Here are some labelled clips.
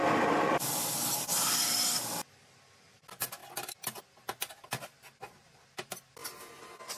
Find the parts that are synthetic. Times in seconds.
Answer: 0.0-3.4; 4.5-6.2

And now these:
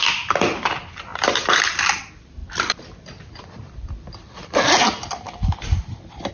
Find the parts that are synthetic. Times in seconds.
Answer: 1.1-2.0; 2.4-6.3

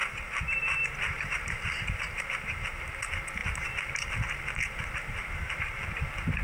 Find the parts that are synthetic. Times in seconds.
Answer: 0.0-3.0; 3.4-5.6

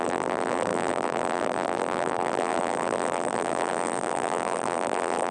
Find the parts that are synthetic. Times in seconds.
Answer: 0.0-5.3

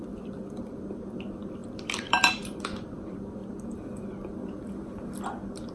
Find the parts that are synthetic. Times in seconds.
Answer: 0.0-3.4

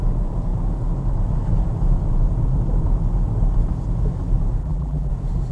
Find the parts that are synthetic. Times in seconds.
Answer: 4.6-5.1

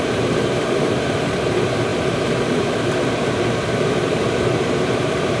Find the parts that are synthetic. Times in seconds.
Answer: 0.0-5.4

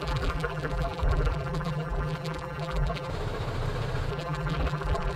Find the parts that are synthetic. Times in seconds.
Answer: 0.0-3.1; 4.1-5.2